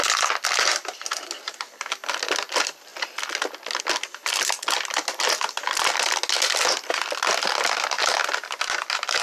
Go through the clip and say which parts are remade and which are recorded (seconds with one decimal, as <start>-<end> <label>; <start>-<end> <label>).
0.0-9.2 recorded